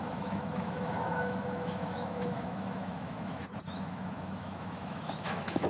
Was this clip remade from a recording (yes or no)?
yes